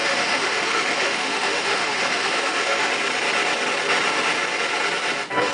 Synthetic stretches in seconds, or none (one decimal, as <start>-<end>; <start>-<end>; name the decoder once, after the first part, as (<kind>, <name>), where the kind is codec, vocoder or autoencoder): 0.0-2.9 (autoencoder, DAC-VAE)